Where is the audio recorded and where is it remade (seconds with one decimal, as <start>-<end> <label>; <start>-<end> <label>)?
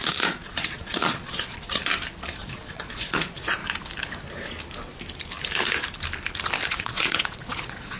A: 0.0-1.8 remade; 1.8-2.4 recorded; 2.4-3.6 remade; 3.6-6.8 recorded; 6.8-8.0 remade